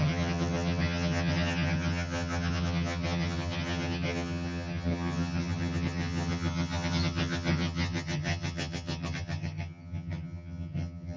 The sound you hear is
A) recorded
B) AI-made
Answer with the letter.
B